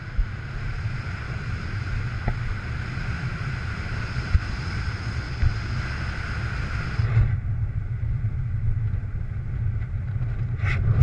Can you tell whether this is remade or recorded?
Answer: recorded